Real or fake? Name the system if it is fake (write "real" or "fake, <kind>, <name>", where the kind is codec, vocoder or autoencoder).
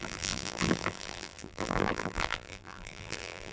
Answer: fake, vocoder, BigVGAN v2